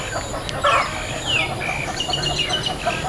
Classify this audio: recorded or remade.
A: recorded